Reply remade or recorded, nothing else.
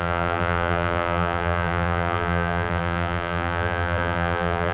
remade